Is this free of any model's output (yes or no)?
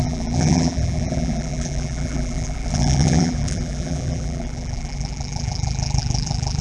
no